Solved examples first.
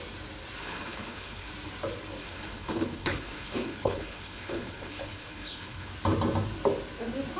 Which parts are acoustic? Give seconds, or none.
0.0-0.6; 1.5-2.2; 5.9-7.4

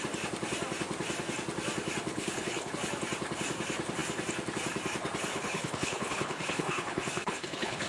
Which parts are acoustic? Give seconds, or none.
0.0-2.1; 2.7-5.3

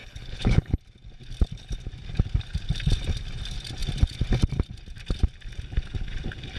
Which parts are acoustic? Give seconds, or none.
0.8-6.6

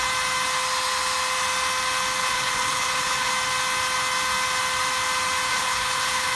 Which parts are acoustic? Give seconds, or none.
0.0-2.2; 3.3-5.5

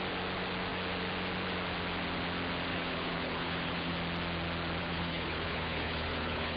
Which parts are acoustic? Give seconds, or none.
0.0-2.7; 3.9-4.8

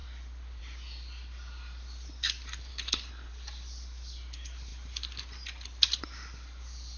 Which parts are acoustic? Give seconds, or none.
0.0-2.7; 3.3-7.0